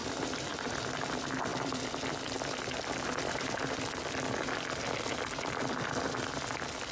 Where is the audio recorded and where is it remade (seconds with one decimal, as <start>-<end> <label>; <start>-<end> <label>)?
0.0-0.7 remade; 0.7-1.5 recorded; 1.5-4.8 remade; 4.8-6.9 recorded